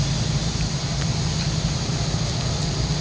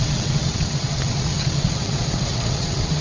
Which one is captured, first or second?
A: first